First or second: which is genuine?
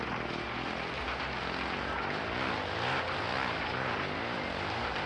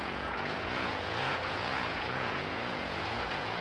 first